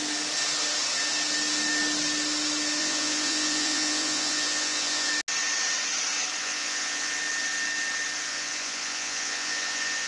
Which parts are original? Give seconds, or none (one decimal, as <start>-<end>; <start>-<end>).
0.0-2.8; 5.1-6.4; 7.1-8.3